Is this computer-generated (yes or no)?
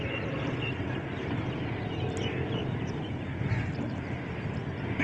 no